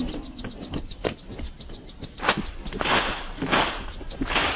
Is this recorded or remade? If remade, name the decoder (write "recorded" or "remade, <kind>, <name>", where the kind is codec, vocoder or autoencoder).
recorded